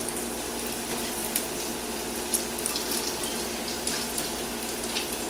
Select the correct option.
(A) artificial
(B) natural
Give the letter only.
B